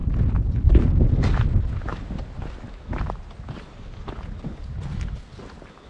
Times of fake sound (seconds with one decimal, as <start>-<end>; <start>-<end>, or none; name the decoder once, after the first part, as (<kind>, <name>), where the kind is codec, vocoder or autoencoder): none